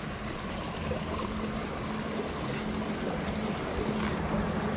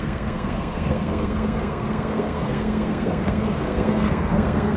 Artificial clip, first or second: second